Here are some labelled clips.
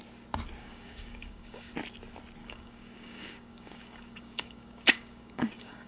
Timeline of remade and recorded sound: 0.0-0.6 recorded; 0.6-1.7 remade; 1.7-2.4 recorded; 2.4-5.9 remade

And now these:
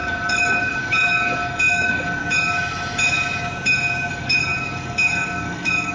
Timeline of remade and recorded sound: 0.0-2.2 remade; 2.2-4.1 recorded; 4.1-5.9 remade